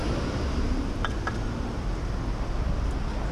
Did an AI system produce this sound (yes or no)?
no